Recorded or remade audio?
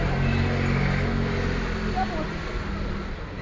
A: recorded